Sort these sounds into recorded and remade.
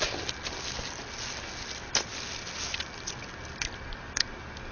recorded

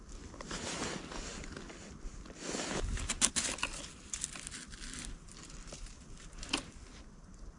recorded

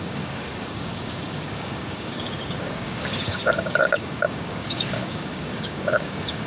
remade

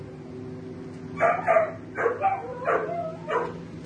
recorded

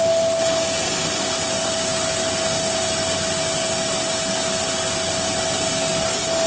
recorded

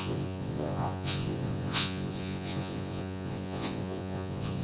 remade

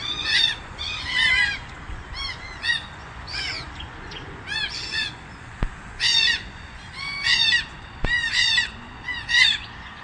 remade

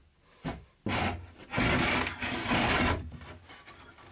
recorded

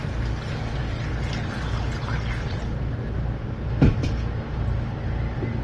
recorded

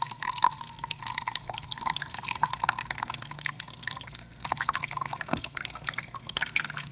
remade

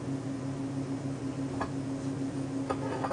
recorded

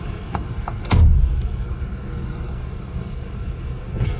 remade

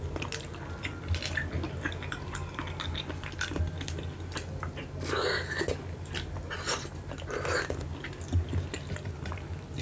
recorded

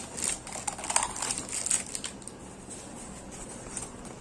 recorded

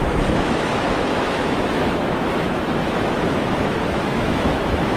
remade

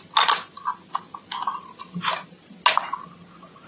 recorded